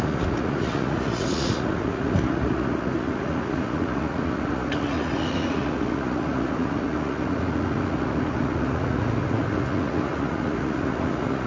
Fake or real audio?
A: fake